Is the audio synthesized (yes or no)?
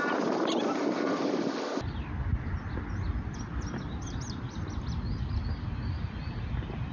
no